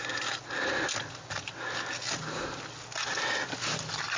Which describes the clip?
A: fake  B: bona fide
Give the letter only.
B